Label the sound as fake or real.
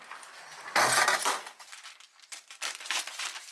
real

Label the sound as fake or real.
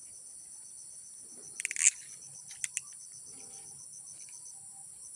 real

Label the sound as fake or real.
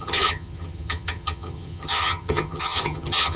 fake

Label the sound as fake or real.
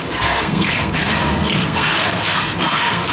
fake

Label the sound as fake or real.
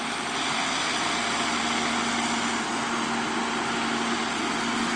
real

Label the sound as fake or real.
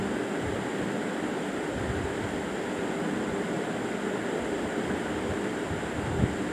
real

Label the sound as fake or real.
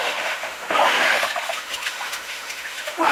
fake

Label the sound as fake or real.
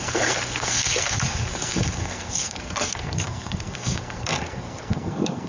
fake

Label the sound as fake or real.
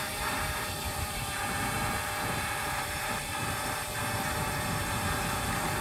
fake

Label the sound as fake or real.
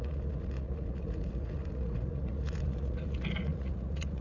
fake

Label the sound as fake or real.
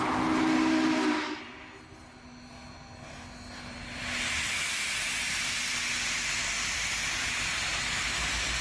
real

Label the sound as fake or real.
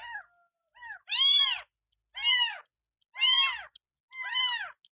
real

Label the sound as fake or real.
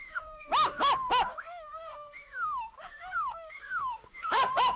fake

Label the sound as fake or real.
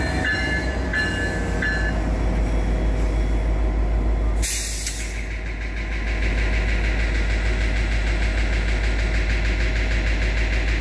real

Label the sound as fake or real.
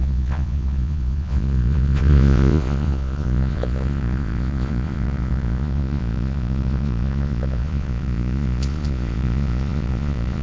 fake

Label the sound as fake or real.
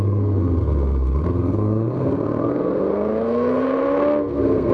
fake